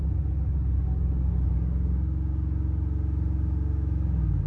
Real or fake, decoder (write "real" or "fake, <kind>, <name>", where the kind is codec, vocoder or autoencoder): real